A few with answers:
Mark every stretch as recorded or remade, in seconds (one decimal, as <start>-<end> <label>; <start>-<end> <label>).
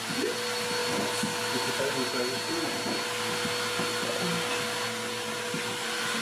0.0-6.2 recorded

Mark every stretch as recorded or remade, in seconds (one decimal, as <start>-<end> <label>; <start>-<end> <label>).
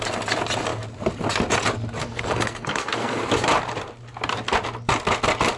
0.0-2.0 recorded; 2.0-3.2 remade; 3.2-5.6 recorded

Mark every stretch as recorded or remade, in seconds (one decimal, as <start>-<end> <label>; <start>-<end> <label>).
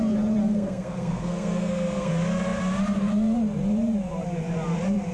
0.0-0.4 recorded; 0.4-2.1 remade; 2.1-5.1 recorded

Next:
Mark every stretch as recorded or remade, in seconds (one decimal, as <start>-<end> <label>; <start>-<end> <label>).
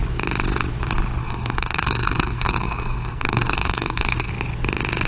0.0-1.2 recorded; 1.2-4.3 remade; 4.3-5.1 recorded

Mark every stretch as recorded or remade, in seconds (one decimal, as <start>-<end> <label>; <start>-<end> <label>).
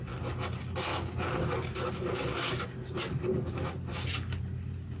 0.0-5.0 recorded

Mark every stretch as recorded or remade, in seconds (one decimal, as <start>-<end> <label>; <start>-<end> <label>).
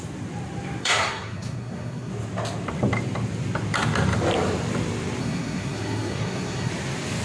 0.0-0.8 recorded; 0.8-2.1 remade; 2.1-5.2 recorded; 5.2-6.7 remade; 6.7-7.2 recorded